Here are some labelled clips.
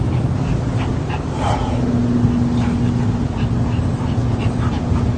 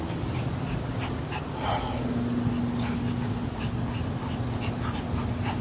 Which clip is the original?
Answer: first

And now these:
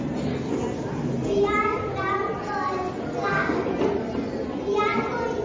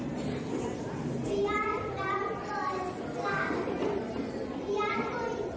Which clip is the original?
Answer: first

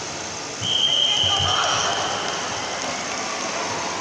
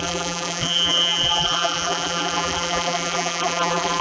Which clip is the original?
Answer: first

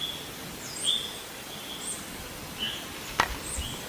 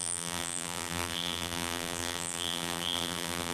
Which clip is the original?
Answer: first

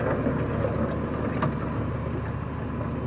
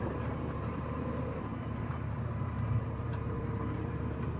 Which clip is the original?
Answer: first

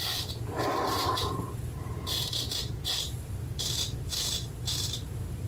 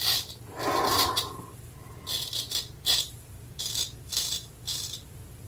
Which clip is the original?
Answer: second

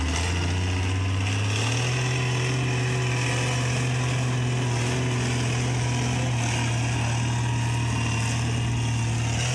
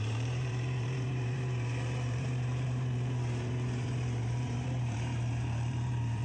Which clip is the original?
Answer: first